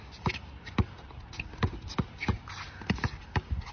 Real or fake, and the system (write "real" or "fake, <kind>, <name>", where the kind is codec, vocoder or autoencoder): real